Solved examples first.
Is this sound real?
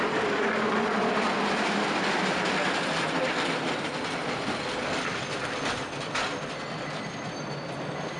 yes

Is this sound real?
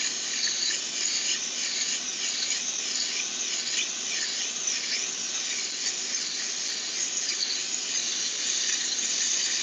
yes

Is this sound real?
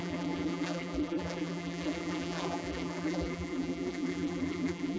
no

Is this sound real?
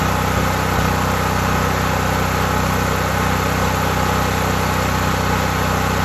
yes